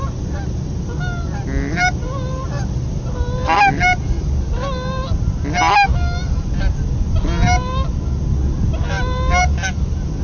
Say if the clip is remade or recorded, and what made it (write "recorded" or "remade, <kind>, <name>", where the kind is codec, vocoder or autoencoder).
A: recorded